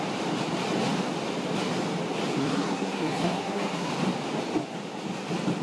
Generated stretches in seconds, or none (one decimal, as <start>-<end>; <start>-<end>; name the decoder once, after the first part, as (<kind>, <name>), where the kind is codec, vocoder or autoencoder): 2.4-3.9 (codec, SNAC)